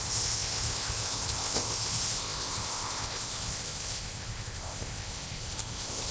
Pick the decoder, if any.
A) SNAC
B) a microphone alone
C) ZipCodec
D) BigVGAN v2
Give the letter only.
C